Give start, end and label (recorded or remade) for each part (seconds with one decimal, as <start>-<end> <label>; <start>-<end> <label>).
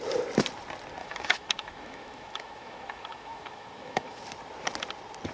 0.0-1.0 recorded; 1.0-4.2 remade; 4.2-5.3 recorded